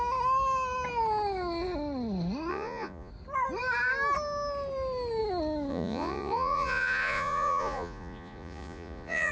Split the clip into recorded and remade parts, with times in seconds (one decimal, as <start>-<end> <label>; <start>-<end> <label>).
0.0-2.5 recorded; 2.5-3.1 remade; 3.1-5.7 recorded; 5.7-9.3 remade